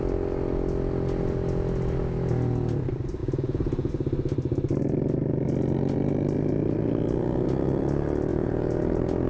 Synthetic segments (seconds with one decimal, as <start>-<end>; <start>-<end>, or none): 3.2-3.9; 8.3-8.8